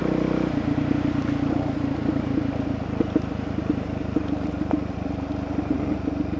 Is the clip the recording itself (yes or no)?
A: yes